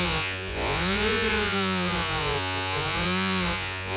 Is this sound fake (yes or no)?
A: yes